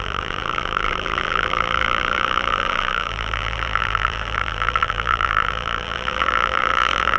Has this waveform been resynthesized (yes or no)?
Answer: yes